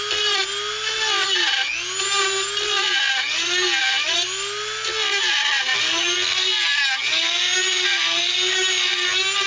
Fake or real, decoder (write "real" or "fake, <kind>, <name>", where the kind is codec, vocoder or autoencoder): real